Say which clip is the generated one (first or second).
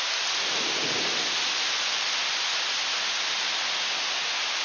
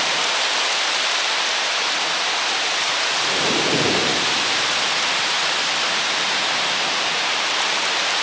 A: second